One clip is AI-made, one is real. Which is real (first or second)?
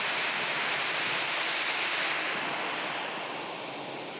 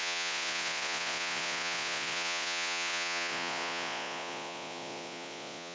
first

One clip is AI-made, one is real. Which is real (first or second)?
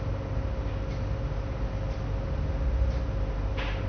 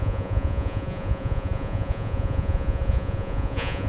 first